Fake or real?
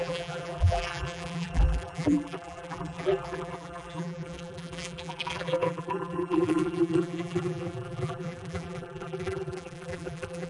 fake